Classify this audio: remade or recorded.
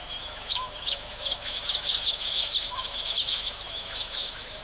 remade